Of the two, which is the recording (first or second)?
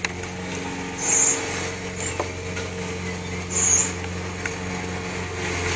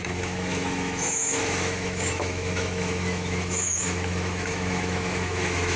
first